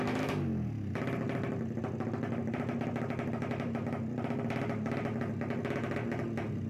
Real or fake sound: real